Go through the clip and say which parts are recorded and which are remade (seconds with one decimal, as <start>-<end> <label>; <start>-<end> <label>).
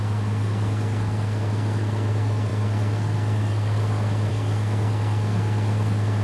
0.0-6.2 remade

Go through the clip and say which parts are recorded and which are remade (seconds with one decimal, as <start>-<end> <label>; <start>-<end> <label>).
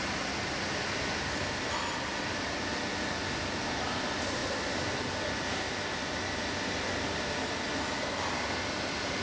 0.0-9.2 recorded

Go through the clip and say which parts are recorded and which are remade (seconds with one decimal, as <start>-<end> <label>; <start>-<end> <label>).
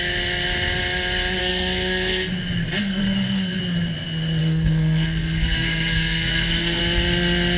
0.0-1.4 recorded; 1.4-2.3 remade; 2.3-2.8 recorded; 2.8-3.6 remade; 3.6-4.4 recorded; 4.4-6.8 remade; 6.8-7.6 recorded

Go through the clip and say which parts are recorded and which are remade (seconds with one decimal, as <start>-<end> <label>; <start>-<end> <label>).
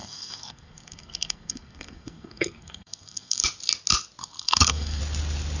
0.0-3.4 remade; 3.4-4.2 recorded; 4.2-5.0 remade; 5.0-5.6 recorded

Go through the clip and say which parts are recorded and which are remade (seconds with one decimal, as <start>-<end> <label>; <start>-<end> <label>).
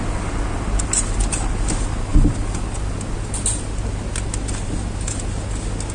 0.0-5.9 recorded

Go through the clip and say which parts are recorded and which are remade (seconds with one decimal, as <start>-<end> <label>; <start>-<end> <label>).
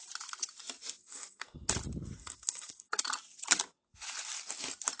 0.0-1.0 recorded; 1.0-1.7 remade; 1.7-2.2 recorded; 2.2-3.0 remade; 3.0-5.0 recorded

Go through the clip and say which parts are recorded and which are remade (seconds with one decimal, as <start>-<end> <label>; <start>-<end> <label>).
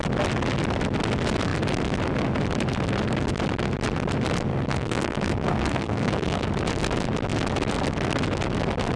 0.0-4.5 recorded; 4.5-6.5 remade; 6.5-9.0 recorded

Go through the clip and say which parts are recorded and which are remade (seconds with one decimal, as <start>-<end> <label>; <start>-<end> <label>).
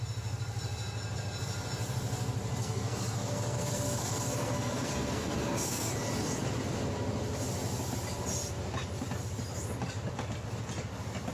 0.0-2.6 recorded; 2.6-5.9 remade; 5.9-11.3 recorded